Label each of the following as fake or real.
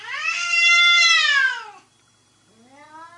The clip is real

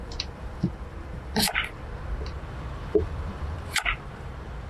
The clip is fake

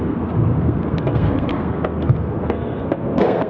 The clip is fake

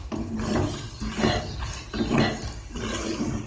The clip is real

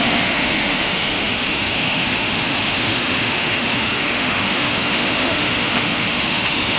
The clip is fake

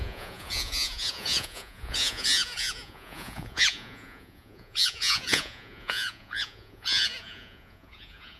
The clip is fake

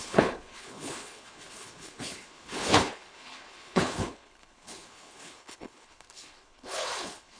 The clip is fake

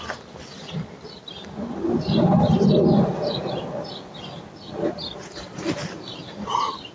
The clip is real